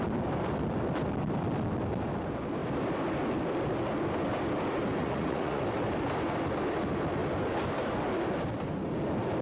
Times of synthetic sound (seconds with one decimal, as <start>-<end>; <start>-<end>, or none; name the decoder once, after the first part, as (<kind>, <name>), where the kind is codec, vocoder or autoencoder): 5.0-5.6 (vocoder, Vocos)